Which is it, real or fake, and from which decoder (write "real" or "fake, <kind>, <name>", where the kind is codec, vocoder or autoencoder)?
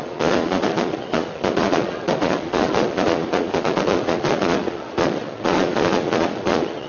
fake, vocoder, Vocos